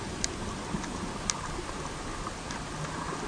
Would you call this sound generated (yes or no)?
no